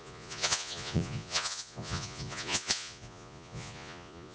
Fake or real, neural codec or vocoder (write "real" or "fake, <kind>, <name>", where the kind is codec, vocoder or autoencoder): fake, vocoder, Vocos